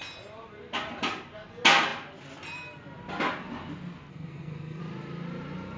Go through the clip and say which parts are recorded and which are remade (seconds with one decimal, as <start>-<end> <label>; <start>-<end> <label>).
0.0-4.1 recorded; 4.1-4.8 remade; 4.8-5.8 recorded